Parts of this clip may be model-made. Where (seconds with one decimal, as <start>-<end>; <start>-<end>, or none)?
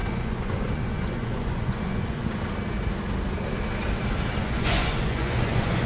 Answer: 0.0-2.2; 4.4-5.9